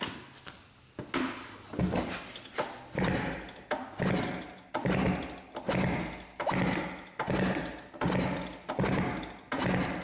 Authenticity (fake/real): real